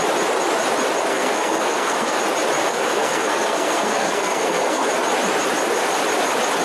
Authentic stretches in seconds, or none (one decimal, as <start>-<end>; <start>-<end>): 0.0-1.1; 2.2-2.6; 4.9-6.6